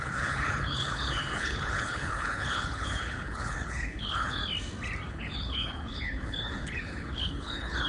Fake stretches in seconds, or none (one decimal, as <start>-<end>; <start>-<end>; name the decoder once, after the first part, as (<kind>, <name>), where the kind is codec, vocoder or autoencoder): 0.0-4.4 (codec, HILCodec); 5.1-7.9